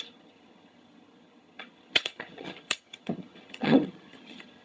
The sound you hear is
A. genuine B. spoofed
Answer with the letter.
B